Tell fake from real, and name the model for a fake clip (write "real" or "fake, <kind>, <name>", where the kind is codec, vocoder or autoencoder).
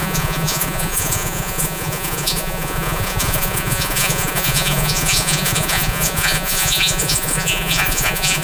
fake, vocoder, Vocos